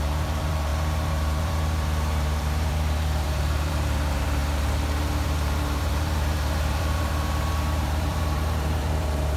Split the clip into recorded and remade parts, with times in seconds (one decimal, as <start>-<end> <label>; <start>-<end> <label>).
0.0-9.4 remade